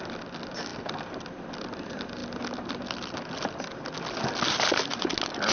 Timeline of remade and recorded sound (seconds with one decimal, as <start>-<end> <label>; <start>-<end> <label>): 0.0-5.5 recorded